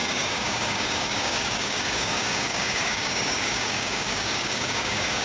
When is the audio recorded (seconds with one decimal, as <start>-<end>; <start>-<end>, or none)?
none

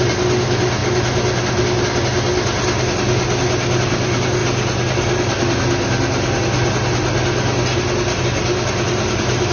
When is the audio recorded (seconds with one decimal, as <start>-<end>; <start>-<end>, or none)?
0.0-9.5

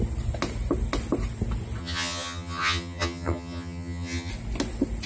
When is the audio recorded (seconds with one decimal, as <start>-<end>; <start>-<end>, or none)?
0.0-1.8; 4.3-5.1

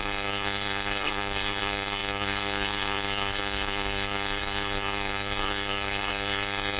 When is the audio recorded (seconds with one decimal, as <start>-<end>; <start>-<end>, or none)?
none